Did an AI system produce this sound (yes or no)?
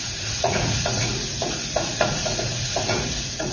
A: yes